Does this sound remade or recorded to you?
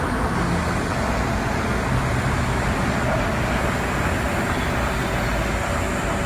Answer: recorded